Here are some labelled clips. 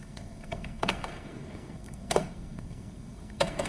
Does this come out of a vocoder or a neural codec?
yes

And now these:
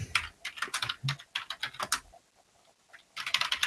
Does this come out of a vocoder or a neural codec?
no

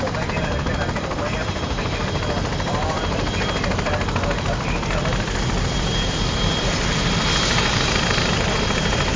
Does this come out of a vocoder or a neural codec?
yes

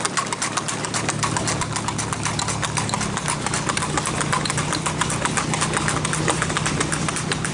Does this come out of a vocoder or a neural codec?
no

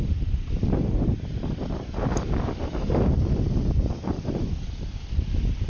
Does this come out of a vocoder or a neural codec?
no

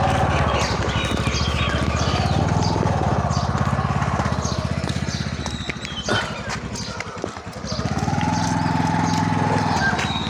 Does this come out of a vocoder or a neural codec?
no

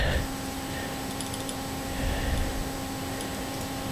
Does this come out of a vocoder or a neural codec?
no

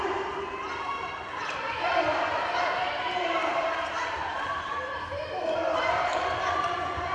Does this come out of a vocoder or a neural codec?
yes